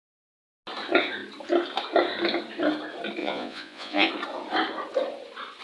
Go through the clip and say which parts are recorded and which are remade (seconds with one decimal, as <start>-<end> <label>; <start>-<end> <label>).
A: 0.0-3.2 recorded; 3.2-4.1 remade; 4.1-5.6 recorded